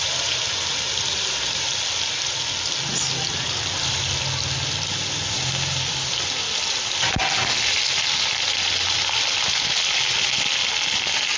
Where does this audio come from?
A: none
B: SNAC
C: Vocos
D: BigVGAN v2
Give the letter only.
A